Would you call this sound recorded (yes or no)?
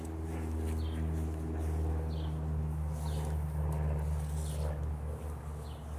yes